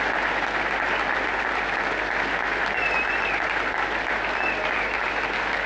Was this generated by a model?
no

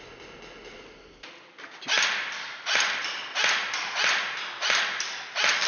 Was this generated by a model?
no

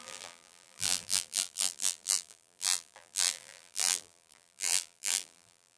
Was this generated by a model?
yes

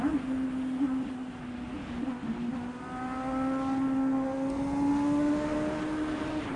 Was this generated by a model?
no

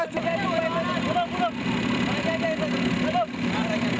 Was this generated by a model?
no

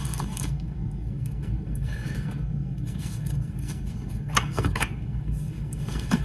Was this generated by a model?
yes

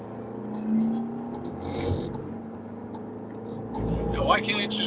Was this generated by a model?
no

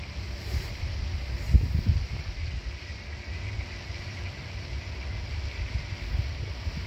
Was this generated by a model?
no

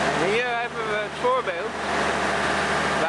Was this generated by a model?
no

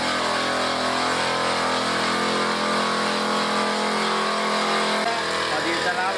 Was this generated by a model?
no